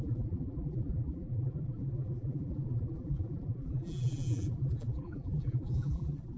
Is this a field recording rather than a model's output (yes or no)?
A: no